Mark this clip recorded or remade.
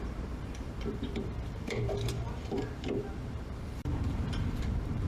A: remade